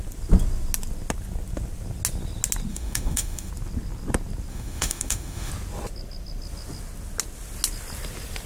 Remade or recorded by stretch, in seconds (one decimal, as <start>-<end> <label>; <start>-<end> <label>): 0.0-2.7 recorded; 2.7-3.5 remade; 3.5-4.5 recorded; 4.5-5.5 remade; 5.5-8.5 recorded